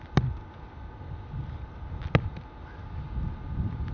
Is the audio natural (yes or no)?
yes